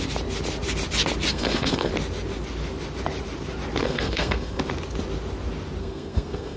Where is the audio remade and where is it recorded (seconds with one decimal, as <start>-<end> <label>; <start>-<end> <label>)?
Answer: 0.0-1.3 recorded; 1.3-1.9 remade; 1.9-3.8 recorded; 3.8-4.6 remade; 4.6-5.8 recorded; 5.8-6.6 remade